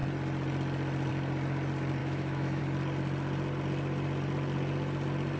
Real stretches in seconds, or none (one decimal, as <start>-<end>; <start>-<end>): 0.0-2.0; 2.6-5.4